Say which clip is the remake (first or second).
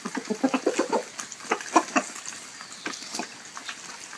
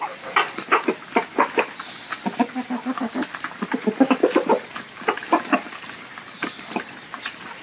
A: second